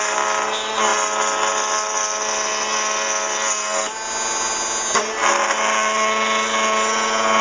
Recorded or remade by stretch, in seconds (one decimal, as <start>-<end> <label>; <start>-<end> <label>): 0.0-7.4 recorded

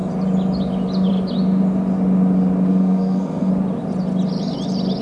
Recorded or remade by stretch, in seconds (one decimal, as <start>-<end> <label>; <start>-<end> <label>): 0.0-2.7 recorded; 2.7-3.5 remade; 3.5-5.0 recorded

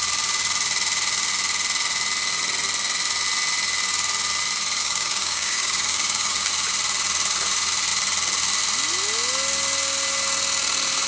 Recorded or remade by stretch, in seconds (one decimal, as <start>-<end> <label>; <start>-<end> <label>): 0.0-4.8 recorded; 4.8-6.5 remade; 6.5-11.1 recorded